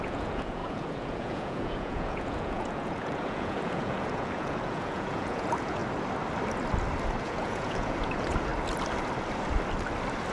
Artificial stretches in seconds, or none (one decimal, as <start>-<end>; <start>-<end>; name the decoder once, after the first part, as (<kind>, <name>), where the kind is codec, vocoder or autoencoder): 0.0-5.8 (vocoder, Vocos); 7.2-8.5